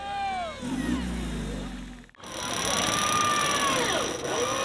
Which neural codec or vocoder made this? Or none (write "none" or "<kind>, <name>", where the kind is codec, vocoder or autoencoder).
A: none